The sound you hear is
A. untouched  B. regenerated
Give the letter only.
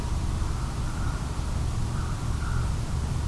B